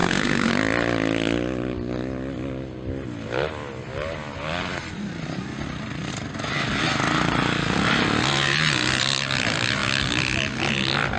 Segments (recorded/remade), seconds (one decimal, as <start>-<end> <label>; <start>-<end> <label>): 0.0-0.5 remade; 0.5-11.2 recorded